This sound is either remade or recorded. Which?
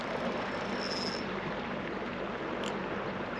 recorded